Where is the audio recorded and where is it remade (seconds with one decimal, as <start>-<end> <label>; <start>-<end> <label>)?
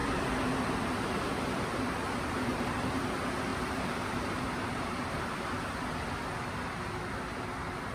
0.0-2.5 recorded; 2.5-3.1 remade; 3.1-3.5 recorded; 3.5-5.2 remade; 5.2-7.9 recorded